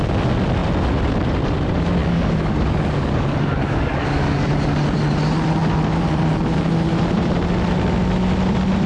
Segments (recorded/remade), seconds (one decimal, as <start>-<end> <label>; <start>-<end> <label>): 0.0-2.0 recorded; 2.0-4.5 remade; 4.5-8.9 recorded